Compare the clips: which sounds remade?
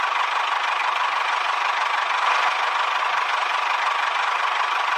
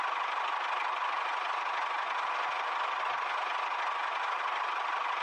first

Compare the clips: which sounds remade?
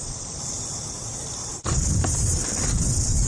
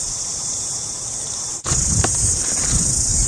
second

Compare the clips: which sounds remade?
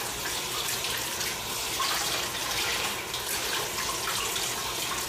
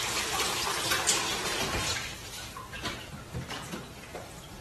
second